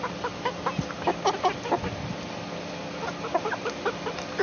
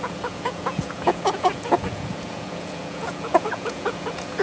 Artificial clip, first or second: second